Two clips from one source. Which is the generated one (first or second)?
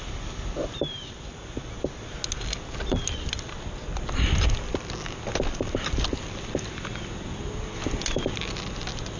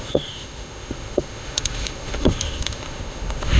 second